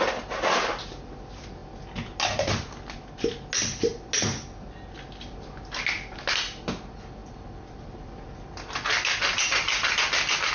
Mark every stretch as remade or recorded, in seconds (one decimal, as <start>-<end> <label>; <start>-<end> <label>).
0.0-10.5 recorded